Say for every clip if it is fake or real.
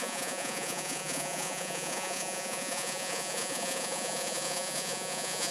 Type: fake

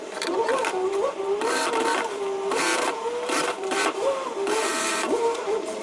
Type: fake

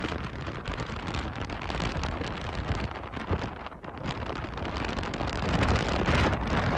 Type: real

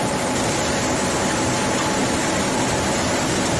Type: real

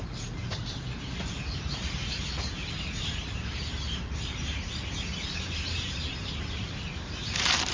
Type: fake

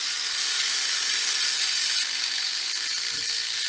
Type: real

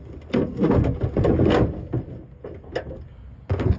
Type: real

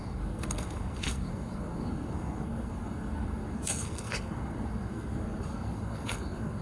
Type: fake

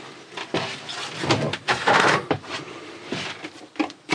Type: real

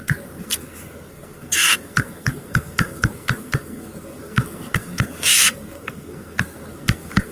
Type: fake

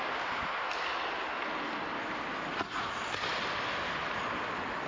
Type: real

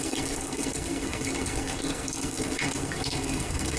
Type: fake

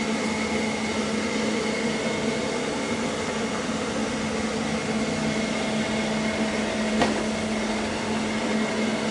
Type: real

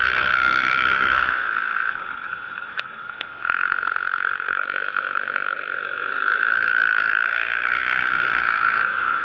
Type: fake